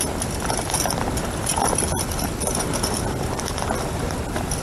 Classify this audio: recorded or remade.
recorded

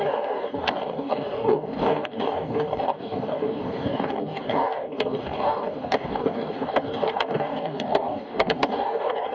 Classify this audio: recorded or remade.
remade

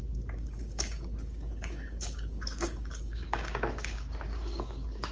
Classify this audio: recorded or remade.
remade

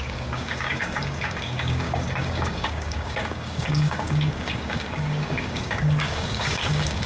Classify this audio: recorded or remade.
remade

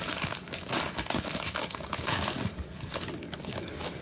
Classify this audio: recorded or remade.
remade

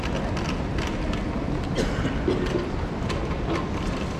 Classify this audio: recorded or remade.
recorded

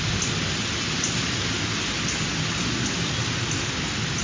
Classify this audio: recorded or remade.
recorded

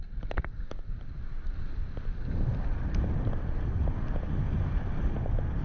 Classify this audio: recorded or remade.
recorded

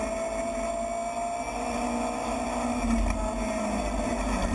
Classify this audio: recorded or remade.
recorded